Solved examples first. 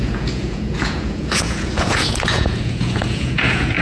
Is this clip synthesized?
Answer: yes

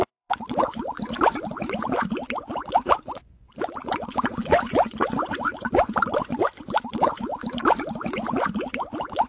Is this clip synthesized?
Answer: yes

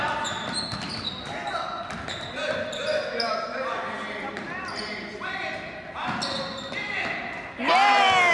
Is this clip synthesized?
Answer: no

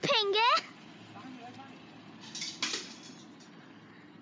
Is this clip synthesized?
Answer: no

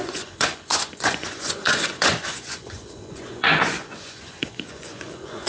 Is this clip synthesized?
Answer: yes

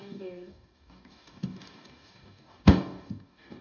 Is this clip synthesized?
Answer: yes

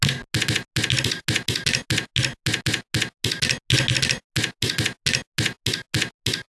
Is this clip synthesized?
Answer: no